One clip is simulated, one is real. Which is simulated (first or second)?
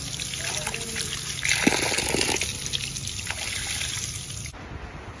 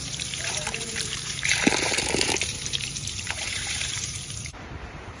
second